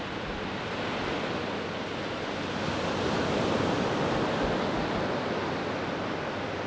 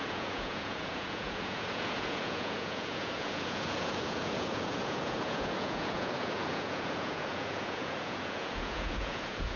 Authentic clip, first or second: first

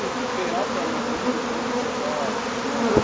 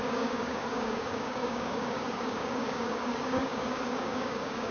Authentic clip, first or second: first